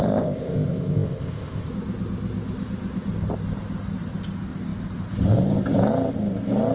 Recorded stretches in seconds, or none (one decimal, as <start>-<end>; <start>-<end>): 1.7-6.7